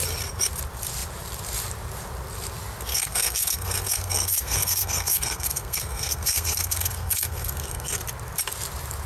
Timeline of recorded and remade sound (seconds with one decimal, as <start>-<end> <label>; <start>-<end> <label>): 0.0-2.9 recorded; 2.9-8.0 remade; 8.0-9.1 recorded